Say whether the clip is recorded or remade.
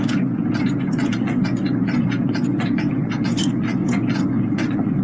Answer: remade